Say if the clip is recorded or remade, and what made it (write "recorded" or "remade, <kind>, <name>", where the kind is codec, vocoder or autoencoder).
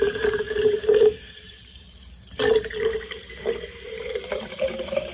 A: remade, vocoder, BigVGAN v2